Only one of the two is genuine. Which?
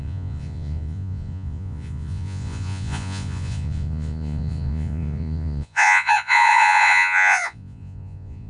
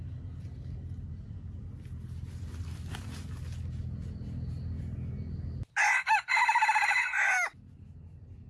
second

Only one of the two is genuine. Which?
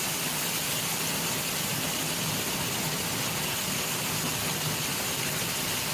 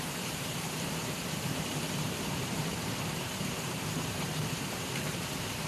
first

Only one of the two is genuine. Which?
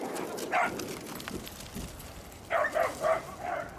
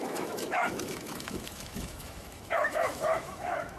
first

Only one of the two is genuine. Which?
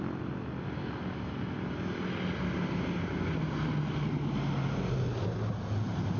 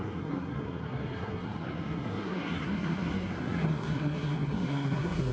first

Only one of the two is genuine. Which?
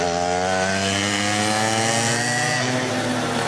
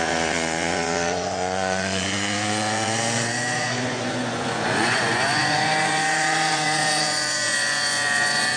first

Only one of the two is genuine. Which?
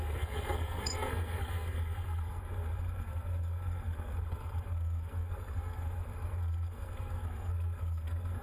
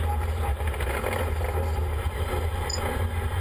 second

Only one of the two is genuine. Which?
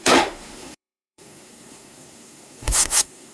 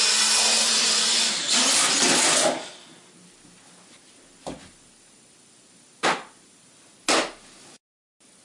second